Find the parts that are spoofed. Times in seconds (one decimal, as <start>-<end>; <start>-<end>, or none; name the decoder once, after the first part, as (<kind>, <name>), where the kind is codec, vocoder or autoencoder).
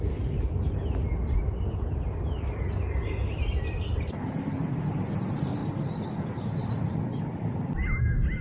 none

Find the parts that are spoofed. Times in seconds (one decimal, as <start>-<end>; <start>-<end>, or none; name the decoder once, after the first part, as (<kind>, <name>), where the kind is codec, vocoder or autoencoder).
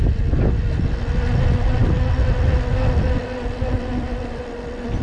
none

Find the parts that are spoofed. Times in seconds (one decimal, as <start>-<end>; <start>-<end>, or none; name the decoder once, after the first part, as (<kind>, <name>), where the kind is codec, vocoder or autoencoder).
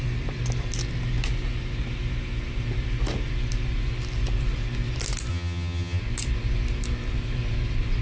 5.3-6.0 (vocoder, HiFi-GAN)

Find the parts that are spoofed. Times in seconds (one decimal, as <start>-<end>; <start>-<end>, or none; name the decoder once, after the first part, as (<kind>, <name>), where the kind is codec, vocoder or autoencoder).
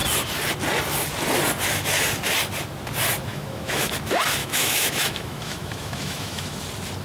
3.3-3.9 (autoencoder, DAC-VAE); 4.4-6.6